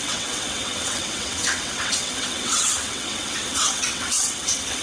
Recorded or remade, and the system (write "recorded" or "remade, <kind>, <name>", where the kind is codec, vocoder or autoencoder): remade, vocoder, WaveNeXt